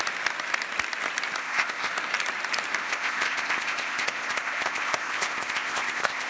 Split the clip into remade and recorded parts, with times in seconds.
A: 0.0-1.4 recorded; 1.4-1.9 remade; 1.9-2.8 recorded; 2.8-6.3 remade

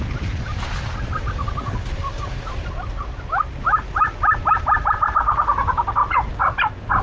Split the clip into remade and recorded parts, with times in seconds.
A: 0.0-7.0 recorded